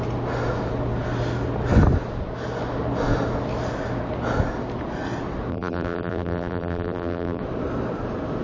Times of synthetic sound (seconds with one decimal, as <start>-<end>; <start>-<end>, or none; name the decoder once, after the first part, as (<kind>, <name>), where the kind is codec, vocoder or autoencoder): 5.5-7.4 (vocoder, BigVGAN v2)